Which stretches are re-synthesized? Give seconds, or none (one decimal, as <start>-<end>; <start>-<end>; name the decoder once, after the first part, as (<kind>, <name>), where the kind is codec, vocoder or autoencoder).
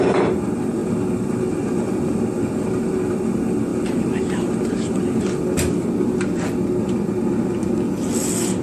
none